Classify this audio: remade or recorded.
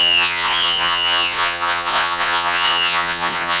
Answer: remade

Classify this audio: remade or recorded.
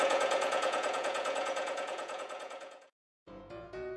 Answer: remade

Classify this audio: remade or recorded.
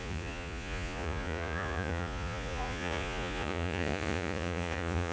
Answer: remade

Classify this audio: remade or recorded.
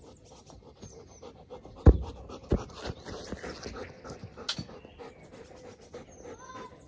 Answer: recorded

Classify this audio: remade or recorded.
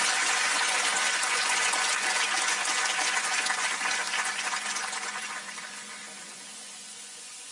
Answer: remade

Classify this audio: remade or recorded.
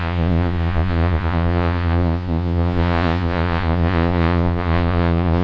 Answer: remade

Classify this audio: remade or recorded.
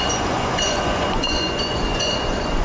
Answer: remade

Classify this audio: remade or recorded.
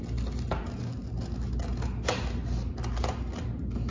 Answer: recorded